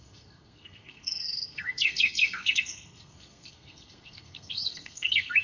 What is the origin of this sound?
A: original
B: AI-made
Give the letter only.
B